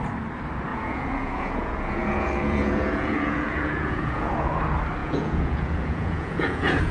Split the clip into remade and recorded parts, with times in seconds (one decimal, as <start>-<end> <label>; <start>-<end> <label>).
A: 0.0-0.7 recorded; 0.7-4.3 remade; 4.3-5.0 recorded; 5.0-6.9 remade